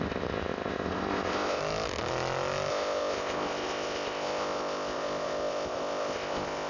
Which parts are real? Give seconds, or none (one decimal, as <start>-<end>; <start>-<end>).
1.6-2.7